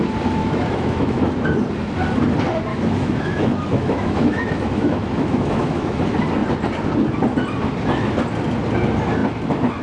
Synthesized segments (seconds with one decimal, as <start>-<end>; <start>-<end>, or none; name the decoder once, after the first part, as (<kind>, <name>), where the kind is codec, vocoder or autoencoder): 0.4-1.2 (autoencoder, DAC-VAE); 2.7-6.0